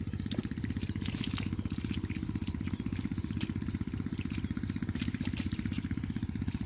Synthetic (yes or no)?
no